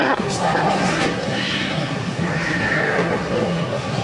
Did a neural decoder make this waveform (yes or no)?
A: yes